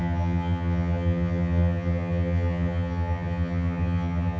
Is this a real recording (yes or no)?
no